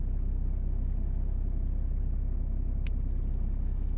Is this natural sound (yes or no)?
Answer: yes